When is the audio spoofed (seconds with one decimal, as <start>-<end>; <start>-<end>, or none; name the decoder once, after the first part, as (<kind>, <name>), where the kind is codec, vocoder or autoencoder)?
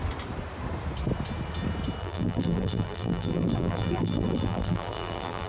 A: 2.0-5.5 (vocoder, BigVGAN v2)